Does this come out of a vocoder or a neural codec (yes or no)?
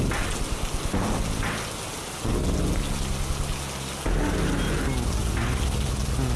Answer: no